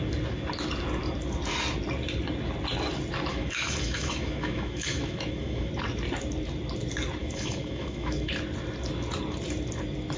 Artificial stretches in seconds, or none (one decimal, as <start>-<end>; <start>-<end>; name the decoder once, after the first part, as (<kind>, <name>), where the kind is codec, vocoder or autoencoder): 3.3-5.7 (autoencoder, DAC-VAE); 7.2-8.3